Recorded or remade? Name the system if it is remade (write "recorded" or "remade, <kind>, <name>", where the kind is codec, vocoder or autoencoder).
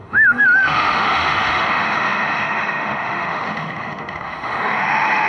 remade, autoencoder, DAC-VAE